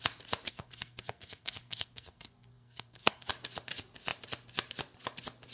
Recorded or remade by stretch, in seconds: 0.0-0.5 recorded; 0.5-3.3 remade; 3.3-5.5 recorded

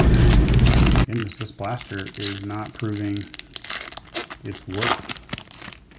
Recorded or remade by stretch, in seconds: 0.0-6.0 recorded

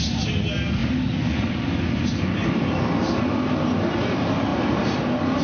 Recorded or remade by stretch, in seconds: 0.0-4.5 recorded; 4.5-5.4 remade